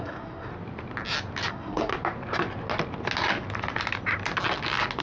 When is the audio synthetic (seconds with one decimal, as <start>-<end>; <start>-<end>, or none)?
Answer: 0.0-0.5; 1.5-1.9